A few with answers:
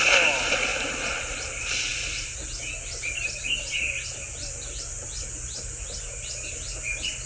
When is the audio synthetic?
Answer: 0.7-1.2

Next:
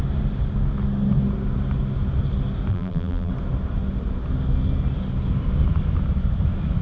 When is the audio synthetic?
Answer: 2.7-3.3

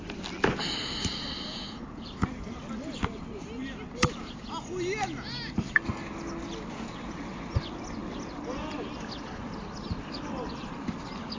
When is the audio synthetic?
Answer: 1.5-2.2